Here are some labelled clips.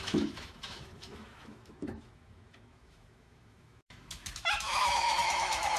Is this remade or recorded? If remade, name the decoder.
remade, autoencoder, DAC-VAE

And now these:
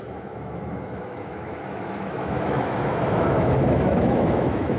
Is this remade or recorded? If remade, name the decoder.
remade, autoencoder, DAC-VAE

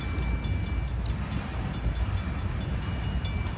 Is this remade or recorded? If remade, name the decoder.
recorded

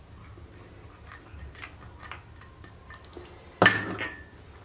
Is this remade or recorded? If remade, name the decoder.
recorded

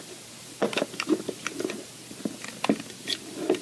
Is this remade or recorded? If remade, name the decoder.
recorded